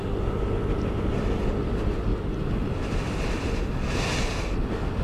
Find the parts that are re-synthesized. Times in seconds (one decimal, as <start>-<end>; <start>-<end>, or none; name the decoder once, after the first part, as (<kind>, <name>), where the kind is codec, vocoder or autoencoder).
none

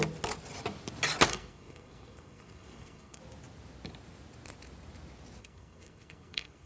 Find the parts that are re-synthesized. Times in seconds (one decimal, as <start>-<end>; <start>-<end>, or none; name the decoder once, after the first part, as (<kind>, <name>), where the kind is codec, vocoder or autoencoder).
1.3-3.2 (codec, SNAC); 5.4-6.7

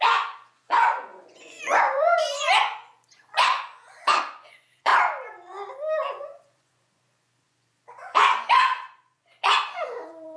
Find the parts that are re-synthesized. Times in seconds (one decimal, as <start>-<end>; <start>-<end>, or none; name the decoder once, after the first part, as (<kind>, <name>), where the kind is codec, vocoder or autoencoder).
0.0-4.9 (vocoder, Vocos); 6.2-10.4

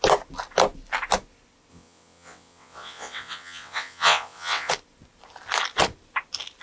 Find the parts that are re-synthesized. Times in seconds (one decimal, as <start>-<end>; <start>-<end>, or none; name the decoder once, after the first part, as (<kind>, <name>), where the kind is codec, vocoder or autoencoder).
1.7-4.7 (vocoder, WaveNeXt)

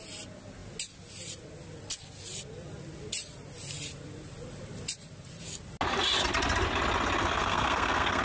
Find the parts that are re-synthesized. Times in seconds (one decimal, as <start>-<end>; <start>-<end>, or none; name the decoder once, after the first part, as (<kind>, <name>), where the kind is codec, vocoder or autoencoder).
7.2-8.2 (codec, SNAC)